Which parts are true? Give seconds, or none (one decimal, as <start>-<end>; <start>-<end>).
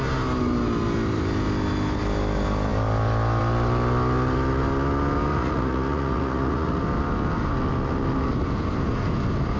0.0-5.3; 6.8-9.6